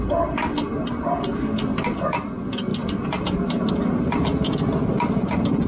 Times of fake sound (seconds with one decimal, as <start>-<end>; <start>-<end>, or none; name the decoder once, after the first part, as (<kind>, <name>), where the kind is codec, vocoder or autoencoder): none